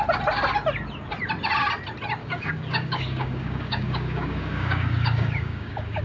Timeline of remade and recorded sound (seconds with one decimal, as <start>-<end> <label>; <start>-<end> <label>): 0.0-2.2 recorded; 2.2-6.0 remade